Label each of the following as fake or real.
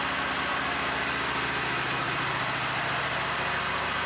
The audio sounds real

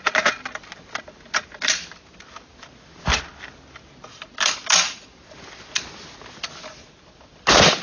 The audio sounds real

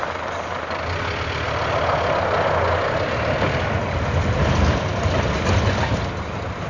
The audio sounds real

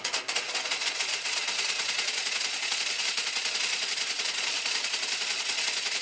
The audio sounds fake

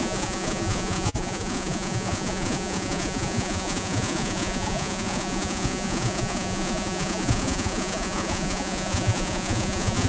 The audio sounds fake